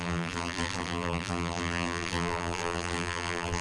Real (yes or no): no